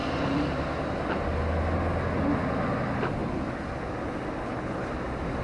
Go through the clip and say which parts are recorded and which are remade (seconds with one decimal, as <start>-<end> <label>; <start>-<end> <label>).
0.0-4.4 recorded; 4.4-4.9 remade; 4.9-5.4 recorded